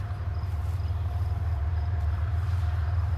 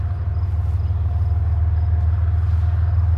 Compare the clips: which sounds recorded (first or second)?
second